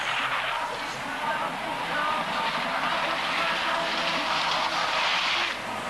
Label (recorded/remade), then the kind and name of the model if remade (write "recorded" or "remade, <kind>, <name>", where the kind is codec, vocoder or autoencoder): recorded